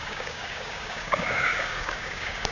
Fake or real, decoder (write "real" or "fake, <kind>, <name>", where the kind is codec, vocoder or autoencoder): fake, codec, DAC